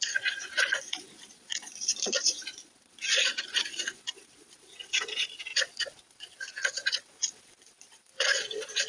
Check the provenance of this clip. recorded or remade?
remade